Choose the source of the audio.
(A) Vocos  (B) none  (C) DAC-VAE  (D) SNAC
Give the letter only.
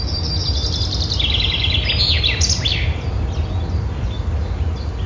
B